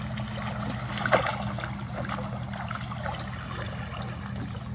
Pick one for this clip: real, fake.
real